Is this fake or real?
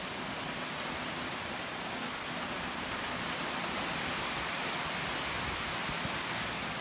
real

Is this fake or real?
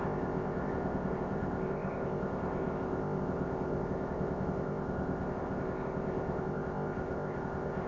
fake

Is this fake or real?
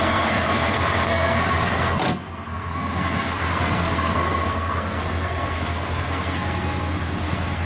fake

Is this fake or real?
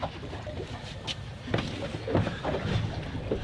real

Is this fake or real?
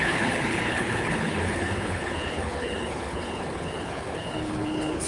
fake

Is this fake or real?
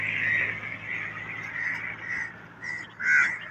real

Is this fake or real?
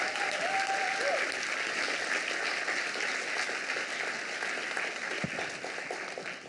real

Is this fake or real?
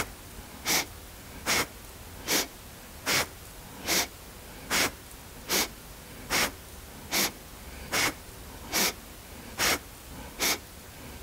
real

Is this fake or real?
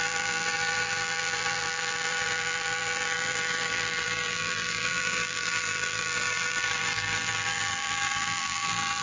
fake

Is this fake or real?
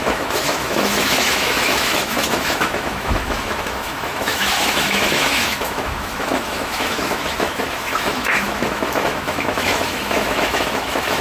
fake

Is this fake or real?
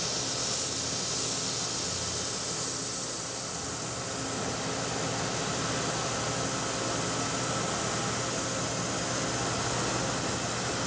real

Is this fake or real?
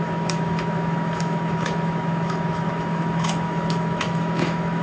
fake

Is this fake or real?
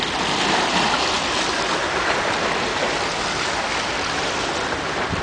real